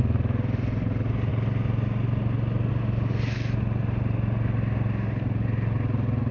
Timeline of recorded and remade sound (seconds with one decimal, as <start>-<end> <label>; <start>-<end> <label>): 0.0-6.3 recorded